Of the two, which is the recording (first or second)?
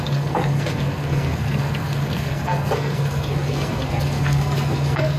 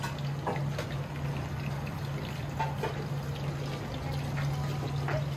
second